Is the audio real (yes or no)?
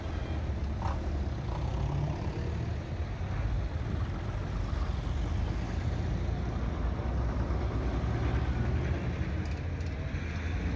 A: yes